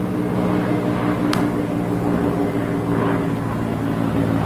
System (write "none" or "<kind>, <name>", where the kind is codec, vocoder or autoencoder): none